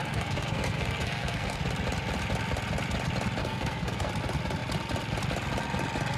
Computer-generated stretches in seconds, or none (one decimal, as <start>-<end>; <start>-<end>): 0.0-1.6; 3.4-4.1